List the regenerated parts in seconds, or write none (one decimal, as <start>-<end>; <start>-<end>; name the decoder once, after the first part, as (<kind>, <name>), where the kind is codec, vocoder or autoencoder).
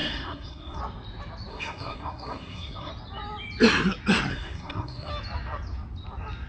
0.0-0.8 (codec, SNAC); 1.5-2.9; 4.3-5.1